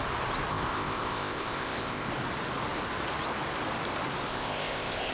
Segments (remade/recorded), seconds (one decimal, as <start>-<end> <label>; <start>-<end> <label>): 0.0-0.5 recorded; 0.5-2.1 remade; 2.1-4.3 recorded; 4.3-5.1 remade